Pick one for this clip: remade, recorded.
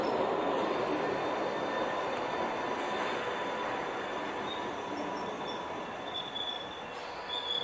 recorded